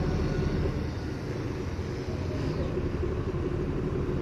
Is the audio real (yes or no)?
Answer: yes